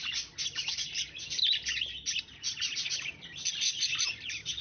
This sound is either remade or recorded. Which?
recorded